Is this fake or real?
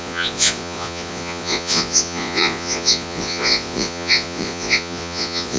fake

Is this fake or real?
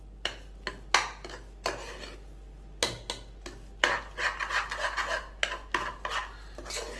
real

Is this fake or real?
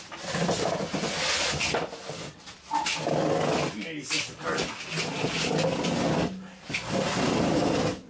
real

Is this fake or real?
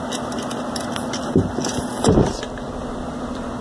real